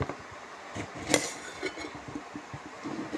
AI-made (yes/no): no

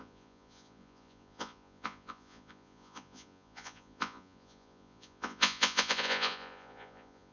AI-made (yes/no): yes